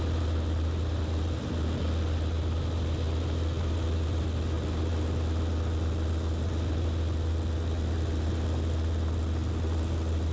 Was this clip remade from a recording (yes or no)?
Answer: no